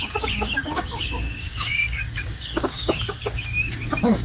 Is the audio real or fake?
fake